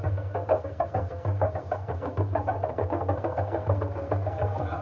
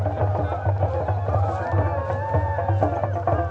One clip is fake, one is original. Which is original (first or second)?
second